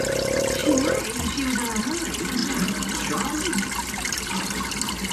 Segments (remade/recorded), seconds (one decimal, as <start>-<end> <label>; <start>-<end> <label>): 0.0-5.1 recorded